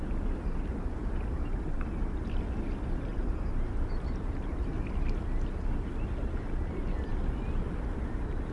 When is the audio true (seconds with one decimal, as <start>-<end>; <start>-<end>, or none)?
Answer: 0.0-1.0; 2.0-3.1; 4.7-8.5